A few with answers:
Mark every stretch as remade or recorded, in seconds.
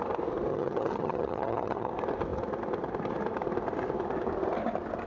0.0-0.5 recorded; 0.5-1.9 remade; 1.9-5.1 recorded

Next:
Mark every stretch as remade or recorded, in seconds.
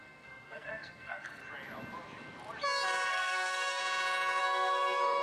0.0-1.4 remade; 1.4-3.1 recorded; 3.1-3.8 remade; 3.8-4.4 recorded; 4.4-5.2 remade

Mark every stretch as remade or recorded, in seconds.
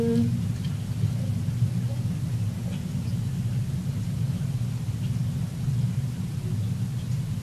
0.0-7.4 recorded